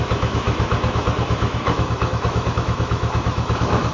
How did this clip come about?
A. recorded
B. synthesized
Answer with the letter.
B